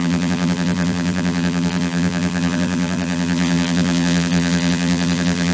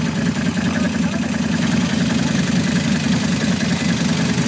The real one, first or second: second